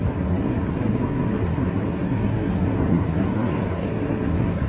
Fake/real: fake